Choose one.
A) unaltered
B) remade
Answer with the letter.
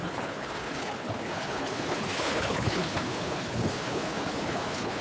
B